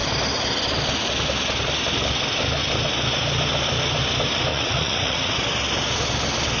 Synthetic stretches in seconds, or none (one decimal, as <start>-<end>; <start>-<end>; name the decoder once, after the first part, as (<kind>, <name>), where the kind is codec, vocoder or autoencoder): 4.5-5.3 (vocoder, Vocos)